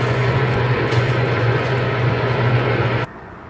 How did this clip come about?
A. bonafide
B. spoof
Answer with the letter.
B